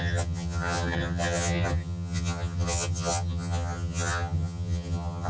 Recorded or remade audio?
remade